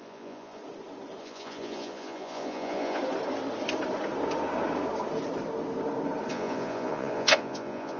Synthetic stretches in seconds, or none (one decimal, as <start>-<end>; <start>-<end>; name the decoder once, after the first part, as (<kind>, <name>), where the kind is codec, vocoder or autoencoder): 0.0-0.6 (vocoder, Vocos); 1.2-3.0; 6.3-8.0